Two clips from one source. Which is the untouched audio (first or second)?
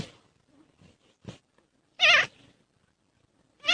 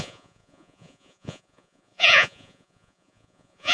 first